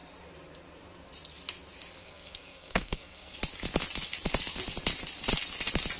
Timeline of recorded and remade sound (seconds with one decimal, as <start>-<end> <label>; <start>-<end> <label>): 0.0-2.0 recorded; 2.0-3.4 remade; 3.4-6.0 recorded